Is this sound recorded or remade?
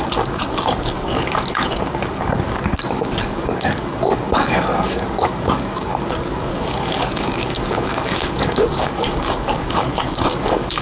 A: remade